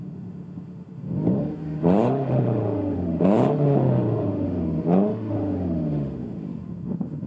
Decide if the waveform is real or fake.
fake